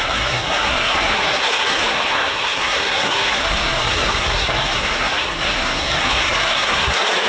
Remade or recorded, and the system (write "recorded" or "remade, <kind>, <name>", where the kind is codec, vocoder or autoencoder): remade, codec, SNAC